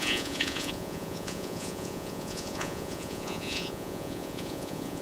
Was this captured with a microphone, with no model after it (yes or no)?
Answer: no